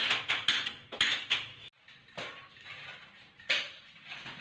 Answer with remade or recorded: recorded